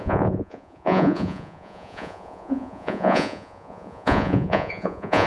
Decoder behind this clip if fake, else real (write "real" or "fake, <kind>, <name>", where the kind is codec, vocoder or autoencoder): fake, vocoder, Vocos